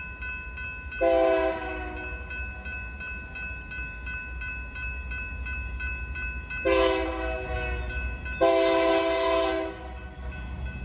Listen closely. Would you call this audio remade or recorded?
recorded